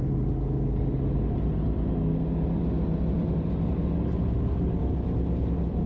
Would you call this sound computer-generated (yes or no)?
no